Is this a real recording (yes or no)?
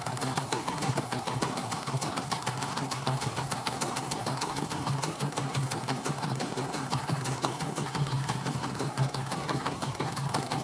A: no